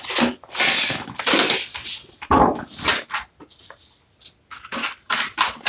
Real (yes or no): yes